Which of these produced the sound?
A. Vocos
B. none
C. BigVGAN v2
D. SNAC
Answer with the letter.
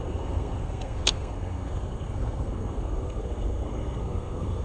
D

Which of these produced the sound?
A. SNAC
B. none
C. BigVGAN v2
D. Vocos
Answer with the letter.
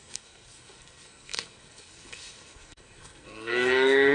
A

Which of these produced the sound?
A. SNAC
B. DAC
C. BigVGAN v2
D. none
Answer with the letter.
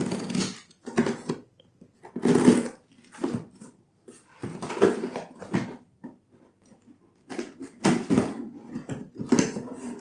D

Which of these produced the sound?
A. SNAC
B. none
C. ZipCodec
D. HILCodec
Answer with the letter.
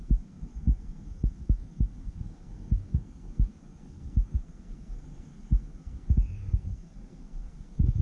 A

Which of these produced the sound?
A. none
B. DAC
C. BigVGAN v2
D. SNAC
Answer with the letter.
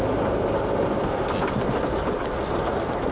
A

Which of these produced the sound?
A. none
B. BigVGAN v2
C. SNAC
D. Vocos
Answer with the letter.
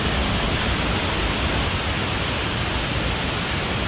A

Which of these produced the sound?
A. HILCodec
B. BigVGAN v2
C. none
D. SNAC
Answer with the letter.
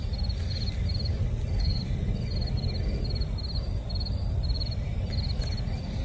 C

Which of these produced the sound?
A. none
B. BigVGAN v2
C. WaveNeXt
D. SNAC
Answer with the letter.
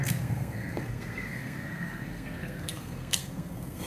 D